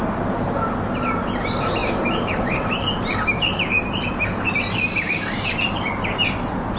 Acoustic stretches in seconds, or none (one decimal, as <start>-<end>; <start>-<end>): 0.0-1.8; 5.9-6.8